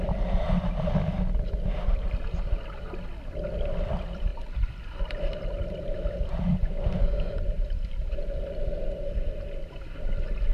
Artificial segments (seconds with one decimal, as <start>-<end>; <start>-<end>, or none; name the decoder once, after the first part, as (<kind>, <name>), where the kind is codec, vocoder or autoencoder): none